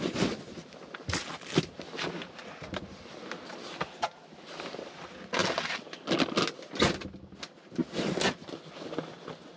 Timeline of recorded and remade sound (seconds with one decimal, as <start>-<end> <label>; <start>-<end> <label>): 0.0-9.6 recorded